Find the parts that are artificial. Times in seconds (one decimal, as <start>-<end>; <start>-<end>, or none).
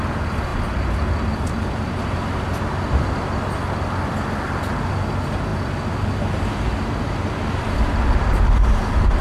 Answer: none